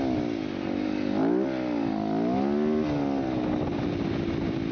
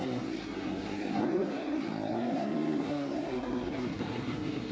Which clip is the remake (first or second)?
second